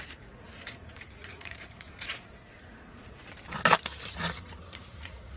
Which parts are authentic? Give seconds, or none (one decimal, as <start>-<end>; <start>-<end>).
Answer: 3.2-4.1